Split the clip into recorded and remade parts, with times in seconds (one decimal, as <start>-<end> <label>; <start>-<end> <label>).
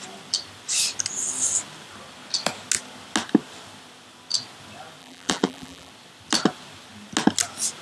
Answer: 0.0-5.0 recorded; 5.0-5.9 remade; 5.9-7.8 recorded